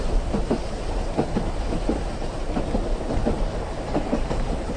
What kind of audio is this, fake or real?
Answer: fake